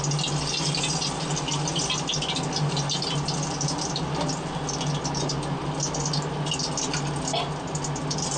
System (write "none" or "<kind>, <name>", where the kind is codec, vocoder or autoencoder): none